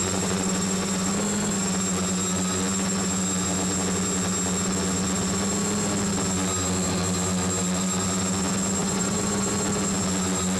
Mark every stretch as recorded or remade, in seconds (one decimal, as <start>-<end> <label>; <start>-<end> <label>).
0.0-1.1 remade; 1.1-8.8 recorded; 8.8-9.5 remade; 9.5-10.6 recorded